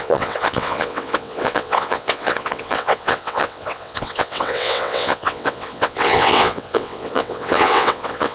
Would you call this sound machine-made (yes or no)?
yes